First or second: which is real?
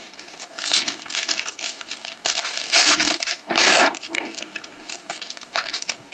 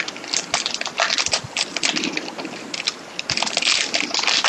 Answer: second